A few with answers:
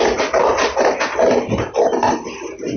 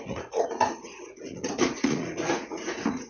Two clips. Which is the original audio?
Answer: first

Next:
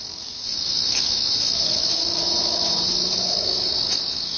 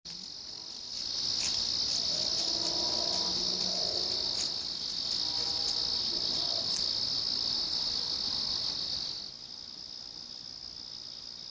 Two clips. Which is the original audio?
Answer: second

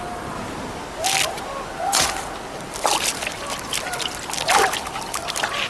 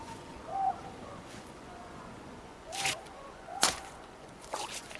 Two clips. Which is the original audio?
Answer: first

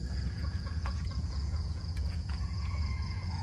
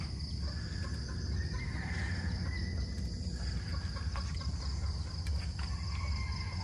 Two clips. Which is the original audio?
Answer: second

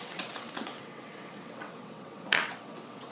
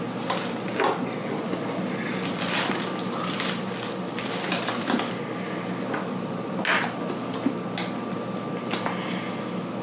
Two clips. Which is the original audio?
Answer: second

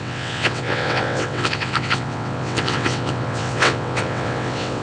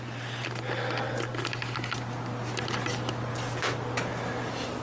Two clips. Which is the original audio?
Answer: second